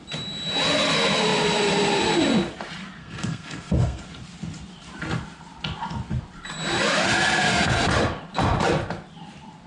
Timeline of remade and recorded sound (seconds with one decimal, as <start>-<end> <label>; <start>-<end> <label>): 0.0-3.0 recorded; 3.0-4.0 remade; 4.0-9.7 recorded